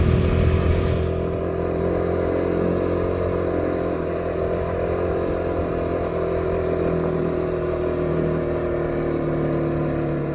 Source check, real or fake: real